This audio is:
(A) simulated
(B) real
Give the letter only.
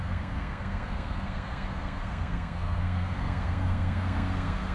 A